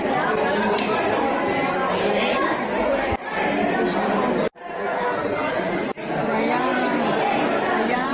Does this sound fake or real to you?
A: real